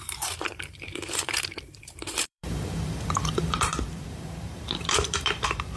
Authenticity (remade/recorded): remade